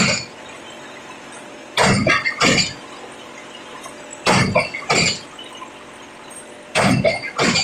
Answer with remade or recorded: recorded